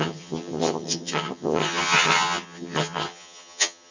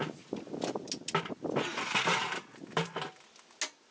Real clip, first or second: second